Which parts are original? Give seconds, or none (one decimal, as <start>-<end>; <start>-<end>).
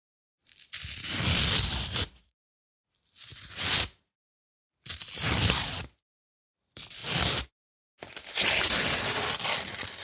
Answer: 7.0-7.6